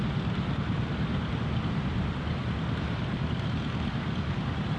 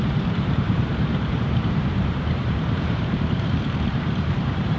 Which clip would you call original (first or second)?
first